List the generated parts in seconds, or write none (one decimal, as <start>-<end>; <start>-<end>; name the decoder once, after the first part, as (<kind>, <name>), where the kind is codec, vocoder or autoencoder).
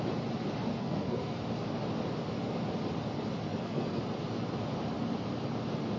0.7-1.4 (codec, SNAC); 3.5-4.0